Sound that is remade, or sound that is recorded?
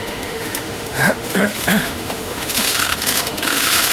remade